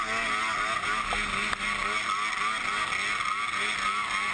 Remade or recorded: recorded